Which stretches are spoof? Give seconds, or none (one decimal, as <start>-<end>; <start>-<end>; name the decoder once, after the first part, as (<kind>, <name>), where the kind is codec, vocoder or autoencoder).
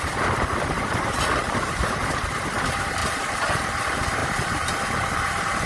1.4-2.2 (vocoder, BigVGAN v2); 3.0-3.8; 4.2-5.7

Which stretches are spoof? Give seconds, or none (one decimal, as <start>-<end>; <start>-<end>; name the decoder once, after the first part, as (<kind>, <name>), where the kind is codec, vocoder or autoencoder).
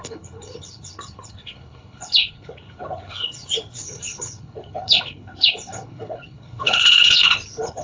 0.0-7.8 (codec, HILCodec)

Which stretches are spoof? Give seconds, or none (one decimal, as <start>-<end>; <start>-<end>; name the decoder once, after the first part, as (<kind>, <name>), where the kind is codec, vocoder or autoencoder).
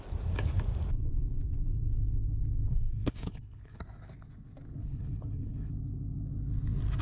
2.7-3.8 (codec, HILCodec); 4.8-5.7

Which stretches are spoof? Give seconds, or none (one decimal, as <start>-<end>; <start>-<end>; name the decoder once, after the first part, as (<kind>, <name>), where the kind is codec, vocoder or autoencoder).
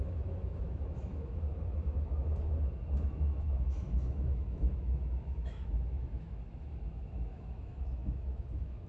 0.0-2.3 (autoencoder, DAC-VAE); 3.0-8.9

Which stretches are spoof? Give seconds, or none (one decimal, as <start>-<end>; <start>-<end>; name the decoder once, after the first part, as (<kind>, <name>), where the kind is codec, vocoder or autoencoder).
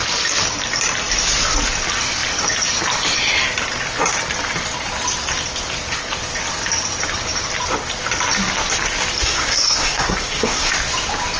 9.2-10.7 (codec, SNAC)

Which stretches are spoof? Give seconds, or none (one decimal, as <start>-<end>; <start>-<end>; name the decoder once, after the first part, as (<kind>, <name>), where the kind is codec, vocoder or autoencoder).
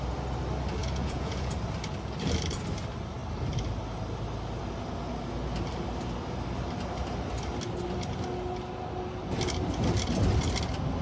0.8-1.5 (vocoder, Vocos)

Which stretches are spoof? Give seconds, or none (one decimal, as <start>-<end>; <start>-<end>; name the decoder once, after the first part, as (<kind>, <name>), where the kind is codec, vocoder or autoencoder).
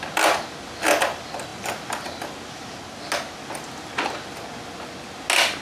none